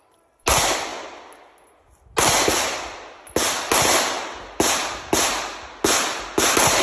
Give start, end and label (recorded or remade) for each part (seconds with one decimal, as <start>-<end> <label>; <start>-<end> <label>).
0.0-6.8 recorded